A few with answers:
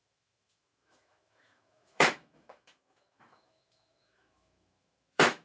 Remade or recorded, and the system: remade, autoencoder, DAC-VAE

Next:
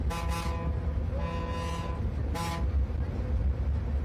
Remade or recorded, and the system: recorded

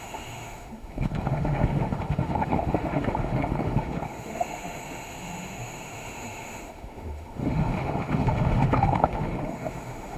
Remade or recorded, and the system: remade, autoencoder, DAC-VAE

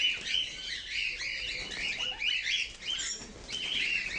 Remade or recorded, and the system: recorded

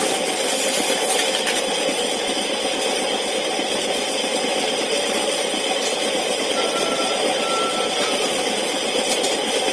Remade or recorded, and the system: recorded